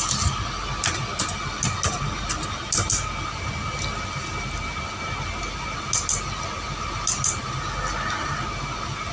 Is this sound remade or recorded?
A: recorded